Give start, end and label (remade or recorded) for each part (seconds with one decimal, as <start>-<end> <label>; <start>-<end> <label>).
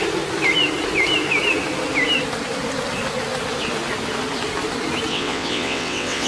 0.0-5.1 recorded; 5.1-6.3 remade